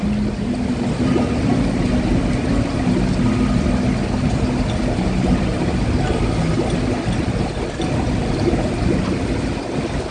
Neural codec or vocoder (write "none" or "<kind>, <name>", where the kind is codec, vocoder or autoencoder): none